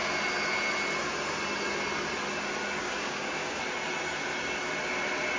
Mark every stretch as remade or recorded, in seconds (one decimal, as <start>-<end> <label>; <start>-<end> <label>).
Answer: 0.0-2.8 recorded; 2.8-3.6 remade; 3.6-5.4 recorded